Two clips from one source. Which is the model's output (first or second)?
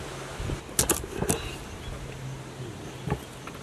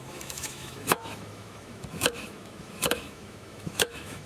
second